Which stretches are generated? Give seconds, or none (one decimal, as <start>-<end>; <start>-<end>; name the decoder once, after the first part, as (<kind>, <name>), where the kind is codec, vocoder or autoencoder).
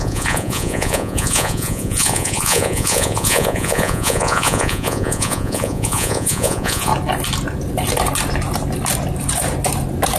0.0-6.9 (vocoder, Vocos)